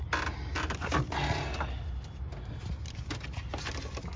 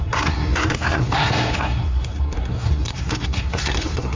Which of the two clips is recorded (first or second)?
first